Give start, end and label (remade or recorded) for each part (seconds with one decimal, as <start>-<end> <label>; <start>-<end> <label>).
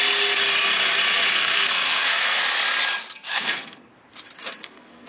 0.0-1.3 recorded; 1.3-2.4 remade; 2.4-3.3 recorded; 3.3-3.9 remade; 3.9-4.4 recorded; 4.4-5.1 remade